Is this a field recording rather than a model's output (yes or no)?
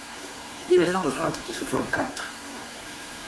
no